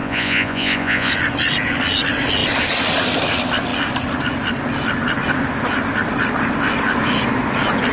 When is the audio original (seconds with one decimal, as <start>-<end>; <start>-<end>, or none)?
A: 1.1-7.9